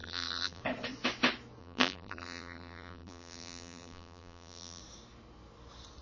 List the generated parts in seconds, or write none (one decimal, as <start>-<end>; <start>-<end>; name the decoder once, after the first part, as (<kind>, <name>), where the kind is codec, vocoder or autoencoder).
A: 0.0-0.6 (vocoder, BigVGAN v2); 1.6-4.8